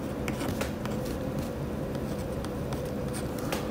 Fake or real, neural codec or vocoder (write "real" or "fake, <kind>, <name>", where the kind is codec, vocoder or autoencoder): real